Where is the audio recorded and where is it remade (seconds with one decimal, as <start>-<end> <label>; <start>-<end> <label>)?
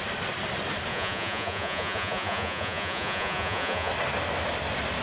0.0-0.9 recorded; 0.9-3.9 remade; 3.9-5.0 recorded